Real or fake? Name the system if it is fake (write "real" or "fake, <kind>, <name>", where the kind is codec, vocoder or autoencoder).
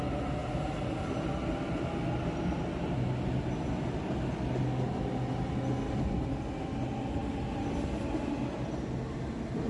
real